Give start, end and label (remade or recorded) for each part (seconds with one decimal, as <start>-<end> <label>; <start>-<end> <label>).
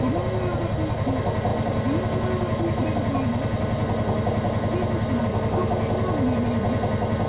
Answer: 0.0-7.3 recorded